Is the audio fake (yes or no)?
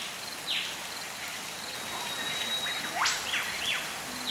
no